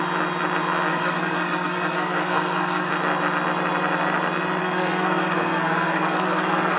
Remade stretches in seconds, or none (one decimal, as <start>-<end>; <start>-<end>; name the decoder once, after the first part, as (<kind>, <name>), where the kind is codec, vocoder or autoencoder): 0.9-2.9 (codec, SNAC); 4.6-6.8